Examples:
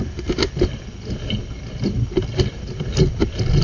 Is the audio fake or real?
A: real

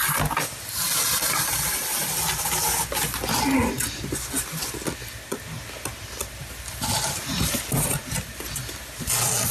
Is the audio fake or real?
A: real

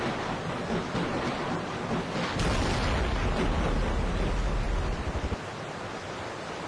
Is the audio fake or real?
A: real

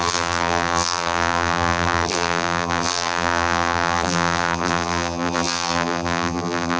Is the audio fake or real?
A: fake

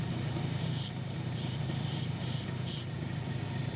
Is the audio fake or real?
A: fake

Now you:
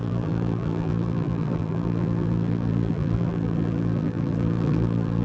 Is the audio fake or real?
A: fake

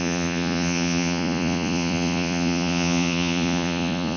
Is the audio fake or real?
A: fake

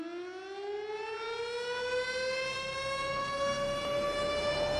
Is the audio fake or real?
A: real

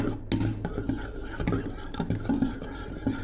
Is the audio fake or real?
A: real